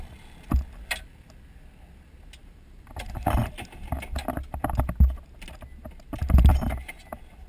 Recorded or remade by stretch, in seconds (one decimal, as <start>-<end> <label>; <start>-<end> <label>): 0.0-2.4 recorded; 2.4-3.3 remade; 3.3-7.5 recorded